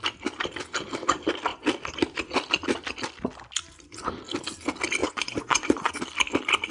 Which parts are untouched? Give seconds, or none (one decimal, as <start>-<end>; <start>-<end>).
0.0-5.0; 5.9-6.7